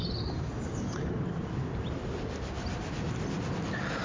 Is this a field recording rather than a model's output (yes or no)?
yes